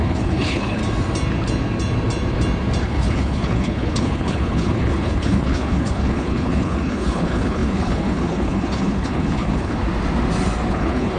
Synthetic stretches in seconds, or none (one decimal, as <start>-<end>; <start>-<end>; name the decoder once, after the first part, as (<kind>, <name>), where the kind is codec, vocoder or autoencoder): 0.0-0.8 (codec, HILCodec); 2.8-9.8; 10.7-11.2